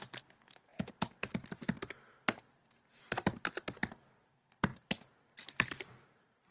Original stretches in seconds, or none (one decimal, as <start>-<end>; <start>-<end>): 0.7-4.3